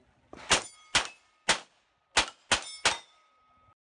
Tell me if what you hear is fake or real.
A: real